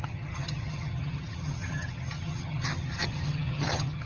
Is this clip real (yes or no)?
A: no